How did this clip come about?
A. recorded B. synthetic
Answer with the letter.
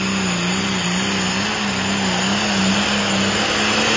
A